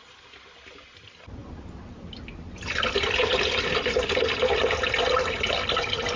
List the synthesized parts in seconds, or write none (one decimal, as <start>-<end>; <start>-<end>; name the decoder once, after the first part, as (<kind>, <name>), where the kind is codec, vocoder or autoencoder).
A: 1.4-5.1 (vocoder, BigVGAN v2)